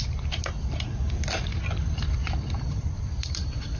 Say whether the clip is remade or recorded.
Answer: recorded